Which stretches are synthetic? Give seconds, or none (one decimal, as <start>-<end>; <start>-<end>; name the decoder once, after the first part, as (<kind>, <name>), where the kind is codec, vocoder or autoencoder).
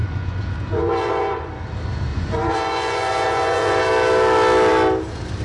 0.0-1.5 (vocoder, Vocos); 2.1-3.8